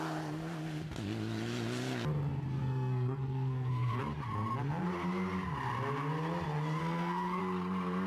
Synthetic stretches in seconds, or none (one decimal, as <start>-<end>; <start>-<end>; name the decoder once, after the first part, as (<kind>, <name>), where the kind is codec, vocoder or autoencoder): 2.6-4.0 (codec, SNAC); 6.8-7.4